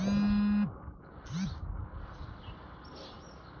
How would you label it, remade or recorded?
recorded